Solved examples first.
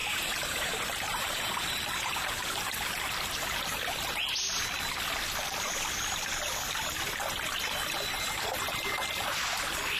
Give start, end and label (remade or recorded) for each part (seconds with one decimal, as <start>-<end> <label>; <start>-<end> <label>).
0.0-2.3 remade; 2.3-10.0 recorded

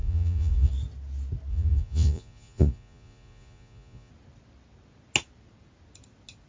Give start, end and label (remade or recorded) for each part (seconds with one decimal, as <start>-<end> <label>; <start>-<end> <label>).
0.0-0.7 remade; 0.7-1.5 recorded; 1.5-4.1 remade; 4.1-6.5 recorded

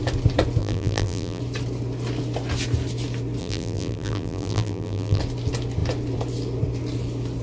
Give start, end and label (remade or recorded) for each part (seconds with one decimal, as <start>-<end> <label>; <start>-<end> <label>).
0.0-0.6 recorded; 0.6-1.4 remade; 1.4-3.4 recorded; 3.4-5.2 remade; 5.2-7.4 recorded

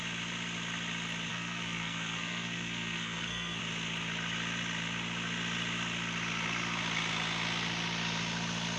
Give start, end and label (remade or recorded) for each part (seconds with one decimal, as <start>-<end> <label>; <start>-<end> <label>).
0.0-1.3 recorded; 1.3-3.6 remade; 3.6-8.8 recorded

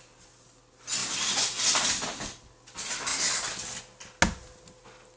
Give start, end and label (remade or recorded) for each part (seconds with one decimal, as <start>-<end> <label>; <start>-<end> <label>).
0.0-5.2 recorded

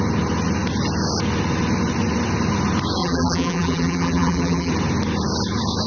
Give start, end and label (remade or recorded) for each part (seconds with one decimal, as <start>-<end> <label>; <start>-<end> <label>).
0.0-3.0 recorded; 3.0-4.7 remade; 4.7-5.9 recorded

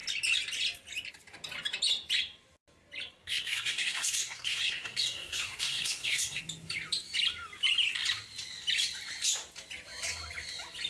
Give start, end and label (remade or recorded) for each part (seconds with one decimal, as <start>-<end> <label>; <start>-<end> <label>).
0.0-3.2 recorded; 3.2-6.4 remade; 6.4-10.9 recorded

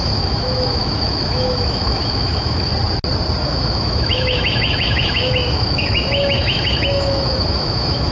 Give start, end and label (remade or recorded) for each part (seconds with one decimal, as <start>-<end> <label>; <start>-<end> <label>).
0.0-2.7 remade; 2.7-3.4 recorded; 3.4-8.1 remade